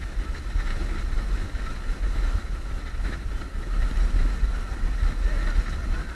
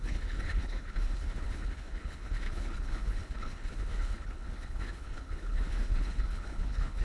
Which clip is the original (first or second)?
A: first